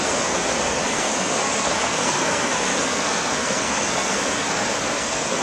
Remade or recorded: remade